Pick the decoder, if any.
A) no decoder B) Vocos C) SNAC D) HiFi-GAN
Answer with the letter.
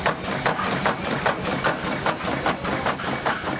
A